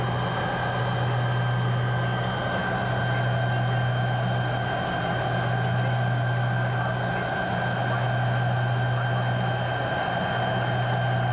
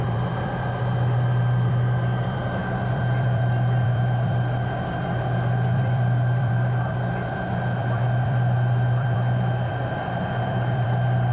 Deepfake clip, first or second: second